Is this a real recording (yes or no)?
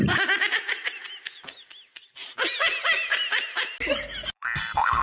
yes